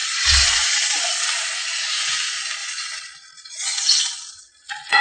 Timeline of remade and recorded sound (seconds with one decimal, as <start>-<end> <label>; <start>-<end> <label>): 0.0-1.0 remade; 1.0-2.6 recorded; 2.6-5.0 remade